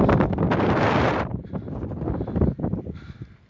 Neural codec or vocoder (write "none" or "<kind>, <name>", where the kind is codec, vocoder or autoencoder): vocoder, BigVGAN v2